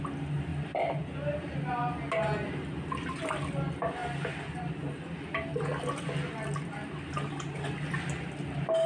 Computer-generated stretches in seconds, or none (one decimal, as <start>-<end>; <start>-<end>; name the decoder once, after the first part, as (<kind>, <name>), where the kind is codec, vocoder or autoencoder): none